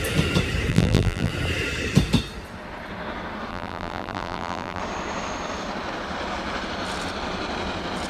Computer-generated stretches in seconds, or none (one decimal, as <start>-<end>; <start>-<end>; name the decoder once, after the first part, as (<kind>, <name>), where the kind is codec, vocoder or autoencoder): 0.7-1.3 (vocoder, BigVGAN v2); 3.5-4.8